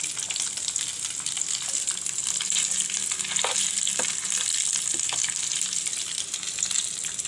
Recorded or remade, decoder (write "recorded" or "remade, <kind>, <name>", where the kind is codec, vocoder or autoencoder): recorded